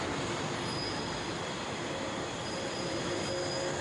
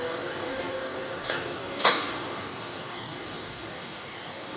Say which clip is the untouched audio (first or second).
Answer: first